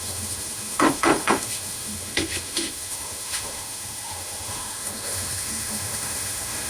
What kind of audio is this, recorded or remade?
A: remade